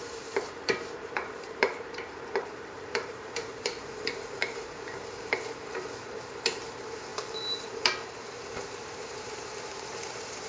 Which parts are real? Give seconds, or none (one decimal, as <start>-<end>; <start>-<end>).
7.1-7.6